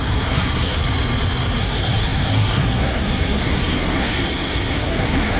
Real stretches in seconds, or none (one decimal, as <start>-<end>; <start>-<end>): 0.8-1.6